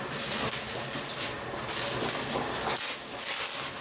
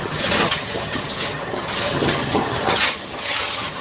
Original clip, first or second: first